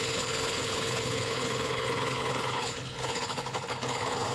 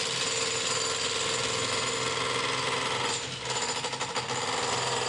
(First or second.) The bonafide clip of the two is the second